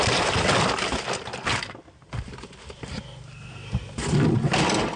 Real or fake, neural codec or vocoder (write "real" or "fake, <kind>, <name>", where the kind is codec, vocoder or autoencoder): real